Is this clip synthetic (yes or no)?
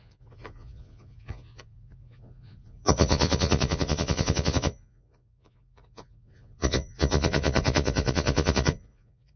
yes